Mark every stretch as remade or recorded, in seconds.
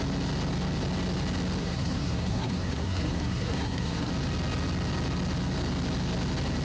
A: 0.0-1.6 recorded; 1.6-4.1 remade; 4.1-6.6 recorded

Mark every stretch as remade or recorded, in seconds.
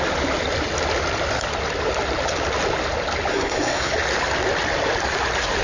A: 0.0-3.3 recorded; 3.3-3.9 remade; 3.9-5.6 recorded